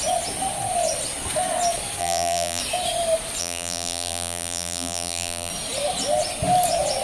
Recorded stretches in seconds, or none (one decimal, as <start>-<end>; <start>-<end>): 0.0-2.0; 2.6-3.4; 5.5-7.0